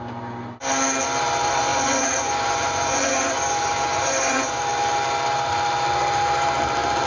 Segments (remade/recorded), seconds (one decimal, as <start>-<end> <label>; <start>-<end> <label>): 0.0-1.7 recorded; 1.7-4.6 remade; 4.6-7.1 recorded